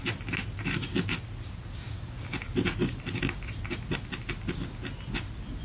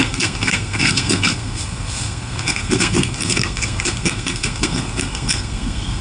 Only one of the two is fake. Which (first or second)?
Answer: second